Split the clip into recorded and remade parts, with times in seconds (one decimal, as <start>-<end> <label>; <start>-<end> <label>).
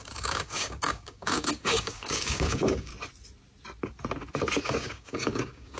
0.0-2.9 remade; 2.9-4.6 recorded; 4.6-5.8 remade